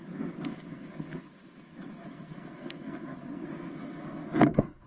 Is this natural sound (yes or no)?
no